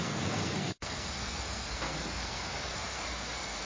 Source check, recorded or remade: remade